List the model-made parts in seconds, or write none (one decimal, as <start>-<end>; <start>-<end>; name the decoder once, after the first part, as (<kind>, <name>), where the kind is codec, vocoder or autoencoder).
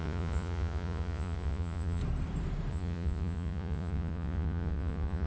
0.0-2.0 (vocoder, Vocos); 2.7-5.3